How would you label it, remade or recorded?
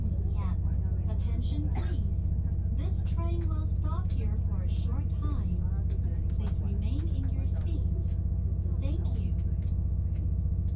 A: recorded